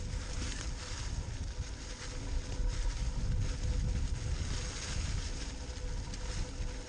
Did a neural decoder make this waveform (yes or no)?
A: no